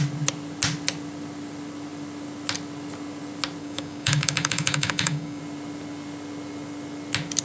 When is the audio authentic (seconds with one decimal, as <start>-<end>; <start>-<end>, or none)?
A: 0.0-3.6; 5.4-7.4